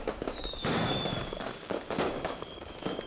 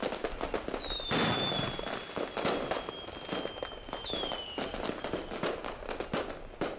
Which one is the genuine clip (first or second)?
second